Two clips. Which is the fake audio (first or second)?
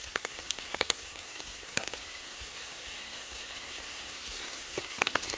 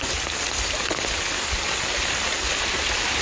first